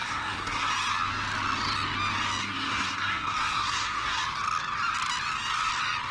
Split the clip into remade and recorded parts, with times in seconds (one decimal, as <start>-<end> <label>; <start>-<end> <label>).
0.0-0.7 remade; 0.7-2.4 recorded; 2.4-4.2 remade; 4.2-6.1 recorded